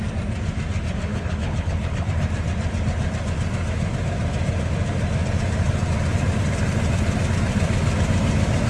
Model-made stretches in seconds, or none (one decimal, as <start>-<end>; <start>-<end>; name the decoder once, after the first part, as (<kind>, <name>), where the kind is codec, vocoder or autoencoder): 1.1-2.1 (codec, HILCodec)